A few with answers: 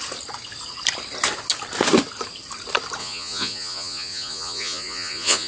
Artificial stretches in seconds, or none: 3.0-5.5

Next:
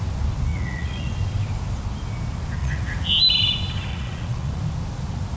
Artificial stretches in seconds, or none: 0.5-1.1; 2.6-3.1; 3.9-4.6

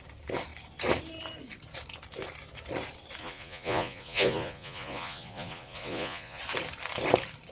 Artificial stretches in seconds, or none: 3.2-6.4

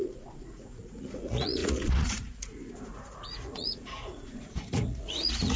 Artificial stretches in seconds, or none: 0.0-5.6

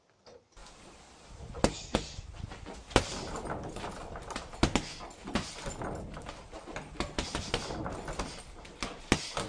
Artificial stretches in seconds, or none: none

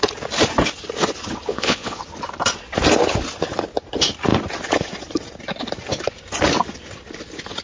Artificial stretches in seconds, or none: 1.5-2.0